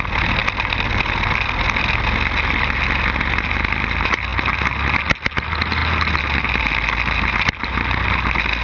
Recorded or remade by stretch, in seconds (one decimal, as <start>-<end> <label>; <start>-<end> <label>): 0.0-8.6 recorded